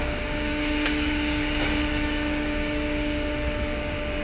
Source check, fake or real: fake